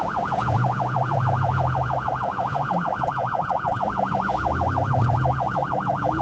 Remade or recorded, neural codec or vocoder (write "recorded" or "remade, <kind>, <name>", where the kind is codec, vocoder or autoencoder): remade, vocoder, Vocos